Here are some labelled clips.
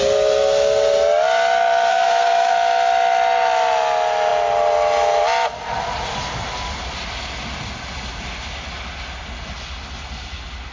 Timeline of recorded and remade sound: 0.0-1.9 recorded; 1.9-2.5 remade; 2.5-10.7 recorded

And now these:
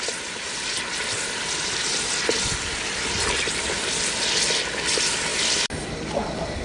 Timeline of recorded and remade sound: 0.0-6.6 recorded